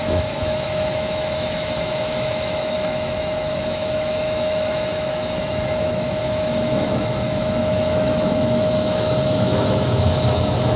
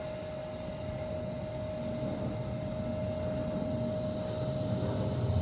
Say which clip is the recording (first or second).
second